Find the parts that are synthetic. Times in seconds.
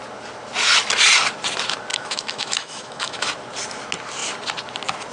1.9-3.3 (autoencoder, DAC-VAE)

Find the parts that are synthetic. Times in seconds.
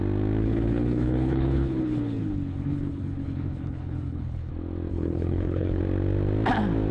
0.4-4.5 (codec, HILCodec); 4.9-5.8